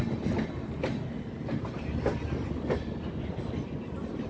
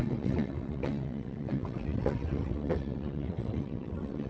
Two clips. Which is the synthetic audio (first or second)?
second